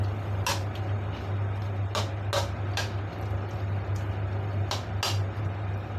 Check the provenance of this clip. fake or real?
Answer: real